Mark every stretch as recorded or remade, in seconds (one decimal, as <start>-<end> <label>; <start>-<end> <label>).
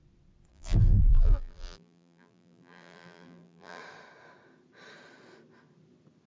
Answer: 0.0-0.5 recorded; 0.5-3.8 remade; 3.8-6.4 recorded